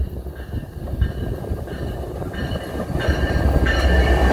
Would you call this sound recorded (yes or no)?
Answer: yes